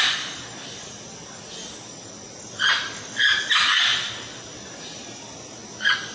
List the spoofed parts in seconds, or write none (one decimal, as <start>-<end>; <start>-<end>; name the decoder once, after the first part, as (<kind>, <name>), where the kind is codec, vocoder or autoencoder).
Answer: none